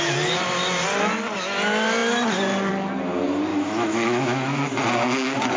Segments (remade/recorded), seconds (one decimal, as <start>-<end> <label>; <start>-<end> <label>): 0.0-3.5 recorded; 3.5-4.7 remade; 4.7-5.6 recorded